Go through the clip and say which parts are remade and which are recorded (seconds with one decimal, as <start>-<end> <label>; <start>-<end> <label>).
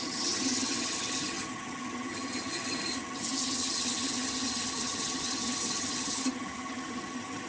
0.0-7.5 remade